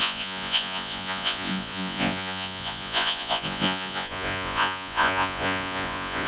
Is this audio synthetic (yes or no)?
yes